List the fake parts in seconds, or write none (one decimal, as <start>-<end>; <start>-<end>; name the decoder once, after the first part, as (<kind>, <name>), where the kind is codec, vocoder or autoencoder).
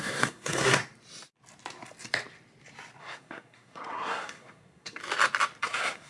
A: 0.0-0.8 (codec, SNAC); 3.0-5.0; 5.6-6.1